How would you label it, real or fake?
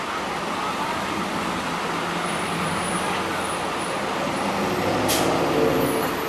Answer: real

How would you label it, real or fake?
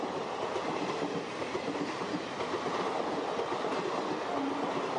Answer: real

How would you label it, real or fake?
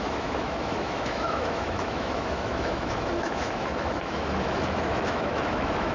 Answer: fake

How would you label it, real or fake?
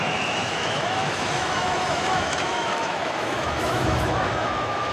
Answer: fake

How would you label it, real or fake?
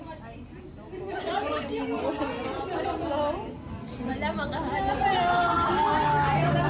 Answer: real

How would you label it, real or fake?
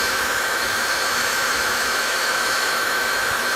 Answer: fake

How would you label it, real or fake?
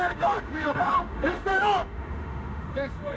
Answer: fake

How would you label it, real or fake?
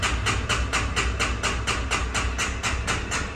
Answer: real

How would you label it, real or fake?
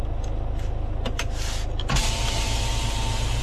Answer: real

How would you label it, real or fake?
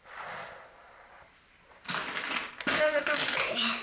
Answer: real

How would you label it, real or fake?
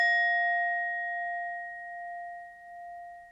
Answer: real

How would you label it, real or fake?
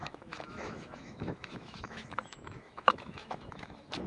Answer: fake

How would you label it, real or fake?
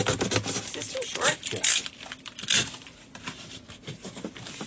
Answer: real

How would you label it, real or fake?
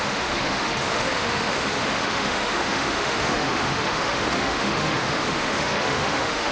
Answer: fake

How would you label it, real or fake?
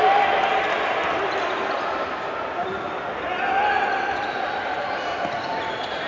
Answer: real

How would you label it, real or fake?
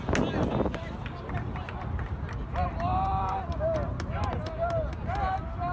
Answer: real